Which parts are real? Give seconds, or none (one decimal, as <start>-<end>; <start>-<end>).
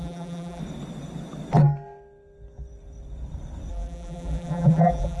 0.6-3.7